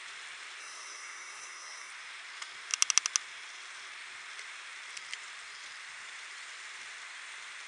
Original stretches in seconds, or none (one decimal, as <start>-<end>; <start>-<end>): 0.0-0.6; 1.9-7.7